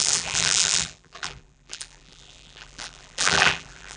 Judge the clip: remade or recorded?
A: remade